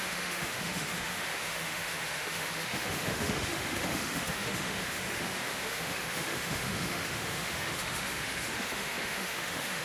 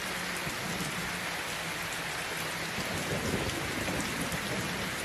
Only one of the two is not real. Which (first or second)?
first